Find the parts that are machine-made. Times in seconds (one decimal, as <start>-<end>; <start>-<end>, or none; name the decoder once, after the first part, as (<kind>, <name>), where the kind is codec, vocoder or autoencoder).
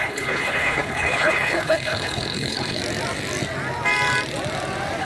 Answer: 0.0-2.8 (codec, HILCodec)